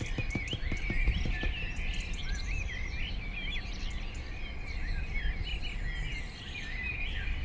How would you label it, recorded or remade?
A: recorded